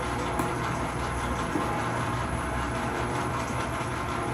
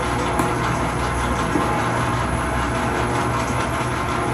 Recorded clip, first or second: second